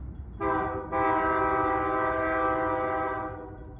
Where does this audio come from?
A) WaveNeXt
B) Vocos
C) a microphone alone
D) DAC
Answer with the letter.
C